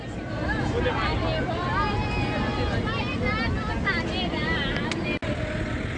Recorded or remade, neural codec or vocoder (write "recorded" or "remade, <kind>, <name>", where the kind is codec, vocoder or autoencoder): recorded